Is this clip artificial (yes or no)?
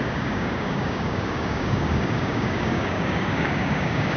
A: yes